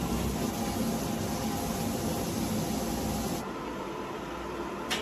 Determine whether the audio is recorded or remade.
recorded